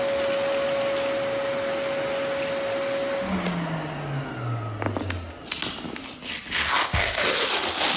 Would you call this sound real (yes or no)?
yes